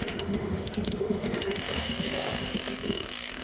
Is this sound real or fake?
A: fake